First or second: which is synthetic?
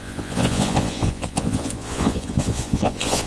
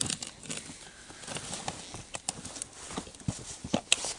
first